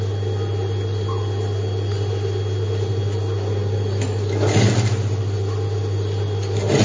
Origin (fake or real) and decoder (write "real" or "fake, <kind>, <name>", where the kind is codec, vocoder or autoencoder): real